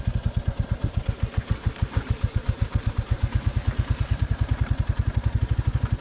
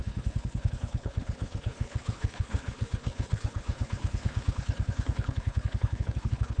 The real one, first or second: first